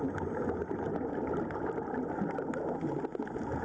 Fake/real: real